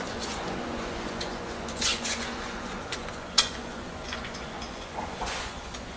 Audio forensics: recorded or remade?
remade